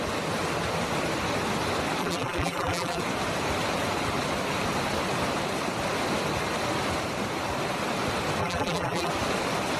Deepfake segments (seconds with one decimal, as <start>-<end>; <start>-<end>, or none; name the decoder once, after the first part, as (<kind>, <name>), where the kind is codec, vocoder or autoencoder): 2.0-3.0 (vocoder, BigVGAN v2); 8.4-9.1